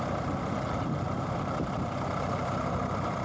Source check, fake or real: real